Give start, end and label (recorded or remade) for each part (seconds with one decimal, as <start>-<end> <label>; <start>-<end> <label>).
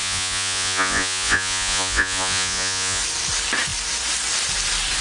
0.0-3.0 remade; 3.0-5.0 recorded